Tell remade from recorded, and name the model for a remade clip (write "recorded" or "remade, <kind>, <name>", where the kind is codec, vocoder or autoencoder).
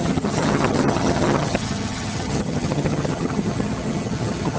remade, vocoder, HiFi-GAN